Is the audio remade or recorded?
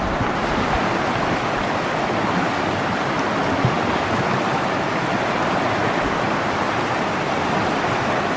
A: recorded